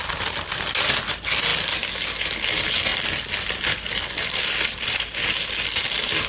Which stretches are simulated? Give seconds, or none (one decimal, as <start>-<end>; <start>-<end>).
none